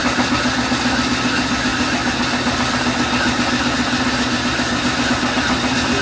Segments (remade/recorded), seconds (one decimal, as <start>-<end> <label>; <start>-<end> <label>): 0.0-6.0 recorded